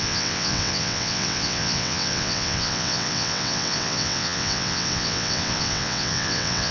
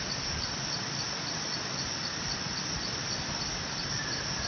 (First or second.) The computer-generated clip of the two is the first